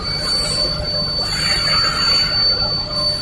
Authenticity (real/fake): real